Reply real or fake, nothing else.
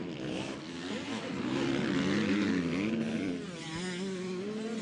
real